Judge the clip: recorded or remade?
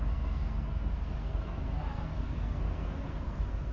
remade